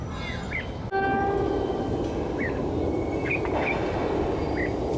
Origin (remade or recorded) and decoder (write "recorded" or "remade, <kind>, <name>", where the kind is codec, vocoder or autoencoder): recorded